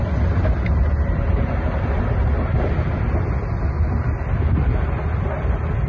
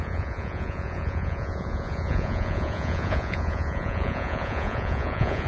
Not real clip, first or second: second